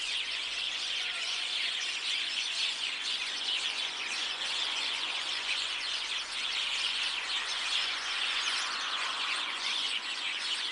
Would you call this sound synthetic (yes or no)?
yes